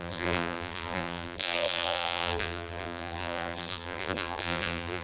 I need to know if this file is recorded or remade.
remade